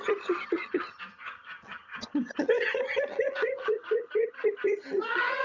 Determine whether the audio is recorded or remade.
remade